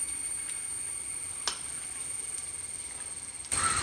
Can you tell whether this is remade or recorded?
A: recorded